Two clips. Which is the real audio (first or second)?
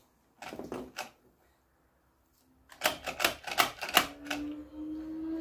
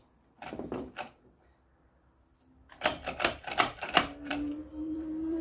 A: first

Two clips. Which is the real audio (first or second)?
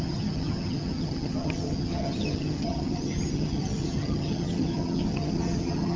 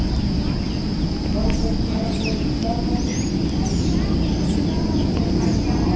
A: second